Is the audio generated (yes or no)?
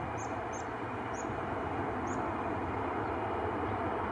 no